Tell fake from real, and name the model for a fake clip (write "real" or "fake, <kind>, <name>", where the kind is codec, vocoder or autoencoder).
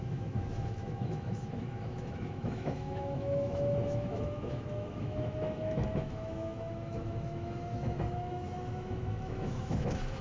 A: fake, autoencoder, DAC-VAE